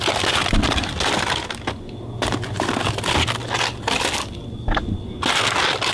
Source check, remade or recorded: recorded